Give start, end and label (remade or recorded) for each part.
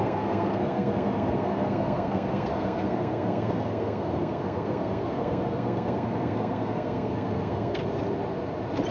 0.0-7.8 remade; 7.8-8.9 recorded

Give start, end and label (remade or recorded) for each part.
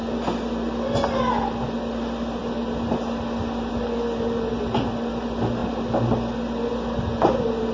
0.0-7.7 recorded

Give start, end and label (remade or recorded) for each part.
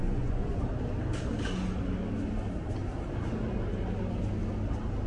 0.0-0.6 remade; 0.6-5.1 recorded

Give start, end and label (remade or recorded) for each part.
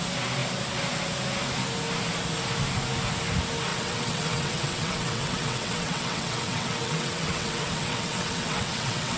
0.0-3.7 recorded; 3.7-9.2 remade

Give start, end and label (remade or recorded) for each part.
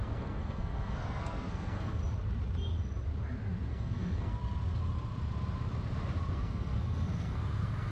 0.0-2.0 remade; 2.0-3.7 recorded; 3.7-4.4 remade; 4.4-6.3 recorded; 6.3-7.9 remade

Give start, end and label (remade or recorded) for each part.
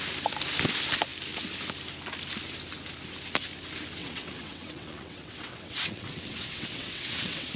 0.0-4.0 recorded; 4.0-7.6 remade